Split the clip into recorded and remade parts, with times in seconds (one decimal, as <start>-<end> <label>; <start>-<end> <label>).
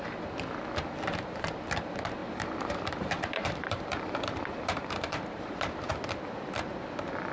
0.0-2.2 recorded; 2.2-5.9 remade; 5.9-7.3 recorded